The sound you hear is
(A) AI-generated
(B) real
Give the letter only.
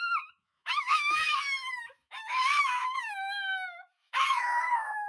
A